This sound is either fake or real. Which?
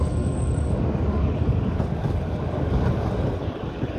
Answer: fake